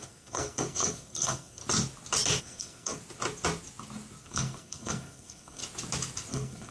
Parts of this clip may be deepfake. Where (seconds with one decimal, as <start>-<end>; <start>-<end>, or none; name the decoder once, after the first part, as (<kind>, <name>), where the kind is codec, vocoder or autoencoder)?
0.0-1.6 (codec, SNAC); 2.4-3.0; 4.2-5.6; 6.3-6.7